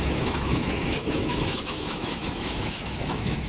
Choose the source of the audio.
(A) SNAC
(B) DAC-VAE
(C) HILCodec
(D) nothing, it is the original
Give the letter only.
B